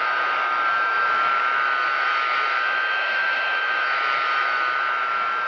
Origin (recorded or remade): remade